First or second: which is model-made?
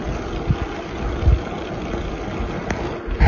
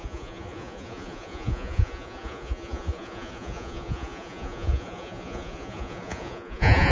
second